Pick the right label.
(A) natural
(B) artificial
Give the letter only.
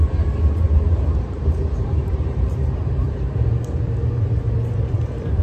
B